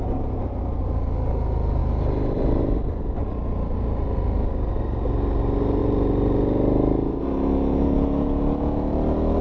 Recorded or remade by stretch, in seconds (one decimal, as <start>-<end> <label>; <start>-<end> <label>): 0.0-9.4 recorded